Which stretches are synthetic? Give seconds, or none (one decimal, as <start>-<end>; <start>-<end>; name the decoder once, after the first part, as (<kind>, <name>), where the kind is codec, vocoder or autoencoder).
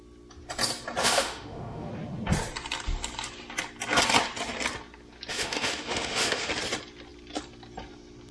1.0-1.9 (autoencoder, DAC-VAE); 5.3-6.5